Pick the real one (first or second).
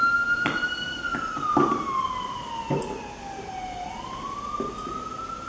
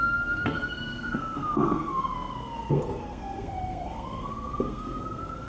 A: first